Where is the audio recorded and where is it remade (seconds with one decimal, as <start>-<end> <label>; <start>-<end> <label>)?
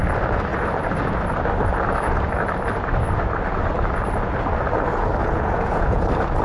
0.0-5.2 recorded; 5.2-6.0 remade; 6.0-6.4 recorded